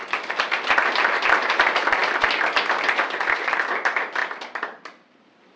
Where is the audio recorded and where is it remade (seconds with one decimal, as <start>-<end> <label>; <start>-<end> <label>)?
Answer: 0.0-2.0 recorded; 2.0-2.5 remade; 2.5-5.6 recorded